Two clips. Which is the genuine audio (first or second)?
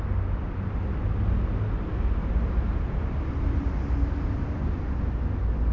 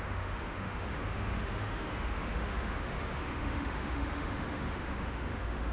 first